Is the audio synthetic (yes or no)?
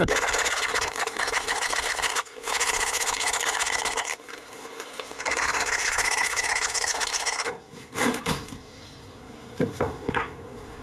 yes